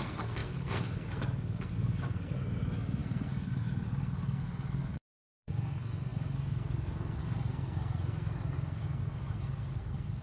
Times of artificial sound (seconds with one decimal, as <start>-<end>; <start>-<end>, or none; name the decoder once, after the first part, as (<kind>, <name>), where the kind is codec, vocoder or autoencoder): 0.0-10.2 (codec, SNAC)